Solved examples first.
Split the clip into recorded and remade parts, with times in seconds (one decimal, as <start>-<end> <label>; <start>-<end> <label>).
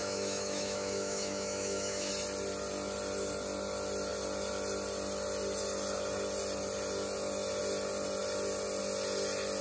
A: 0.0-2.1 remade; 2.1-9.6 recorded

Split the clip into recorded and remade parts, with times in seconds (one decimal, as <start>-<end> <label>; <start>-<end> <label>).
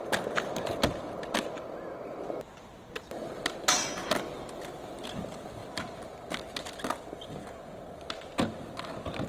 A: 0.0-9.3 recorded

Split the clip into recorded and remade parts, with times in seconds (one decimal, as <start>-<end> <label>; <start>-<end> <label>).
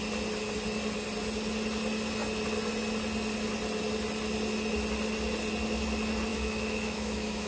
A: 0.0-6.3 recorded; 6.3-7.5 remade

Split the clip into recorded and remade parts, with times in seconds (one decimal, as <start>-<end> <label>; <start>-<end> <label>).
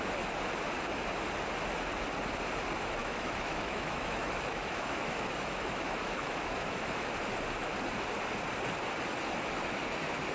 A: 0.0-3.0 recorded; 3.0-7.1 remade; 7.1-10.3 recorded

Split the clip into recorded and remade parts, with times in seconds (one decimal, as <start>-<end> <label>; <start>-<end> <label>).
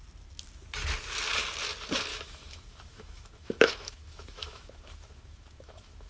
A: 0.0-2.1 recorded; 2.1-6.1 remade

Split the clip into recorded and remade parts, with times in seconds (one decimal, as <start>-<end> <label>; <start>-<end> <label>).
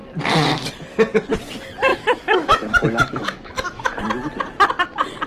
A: 0.0-1.9 recorded; 1.9-4.0 remade; 4.0-5.3 recorded